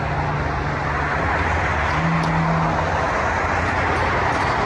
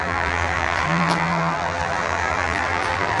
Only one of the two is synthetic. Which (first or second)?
second